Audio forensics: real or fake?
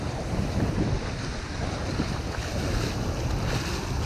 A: real